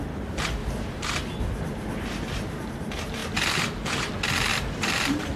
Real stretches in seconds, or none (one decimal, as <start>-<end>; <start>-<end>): 0.0-0.6; 1.1-4.5